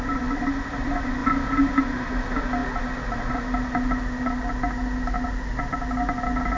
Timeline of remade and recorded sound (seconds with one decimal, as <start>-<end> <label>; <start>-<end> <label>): 0.0-6.6 recorded